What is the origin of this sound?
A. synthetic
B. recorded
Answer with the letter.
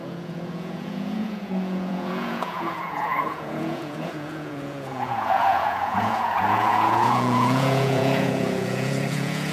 A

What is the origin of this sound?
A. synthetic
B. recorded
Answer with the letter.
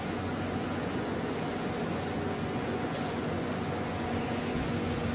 A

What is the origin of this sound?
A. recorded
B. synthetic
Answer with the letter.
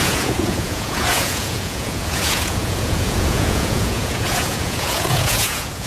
B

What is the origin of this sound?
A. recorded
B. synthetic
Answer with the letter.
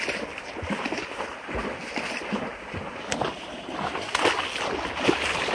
A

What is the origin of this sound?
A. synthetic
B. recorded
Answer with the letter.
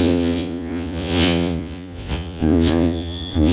A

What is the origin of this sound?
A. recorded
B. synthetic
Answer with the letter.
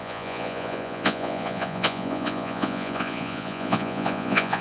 B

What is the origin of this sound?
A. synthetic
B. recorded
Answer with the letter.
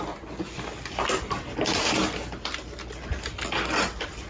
B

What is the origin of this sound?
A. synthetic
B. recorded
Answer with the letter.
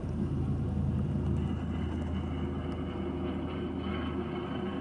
B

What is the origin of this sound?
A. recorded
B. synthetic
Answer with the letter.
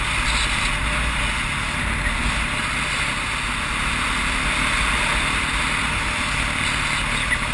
A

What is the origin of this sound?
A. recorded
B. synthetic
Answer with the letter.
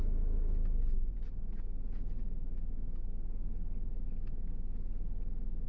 A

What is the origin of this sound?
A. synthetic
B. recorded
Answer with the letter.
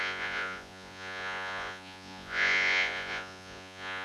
A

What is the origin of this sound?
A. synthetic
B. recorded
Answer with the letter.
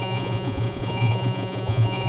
A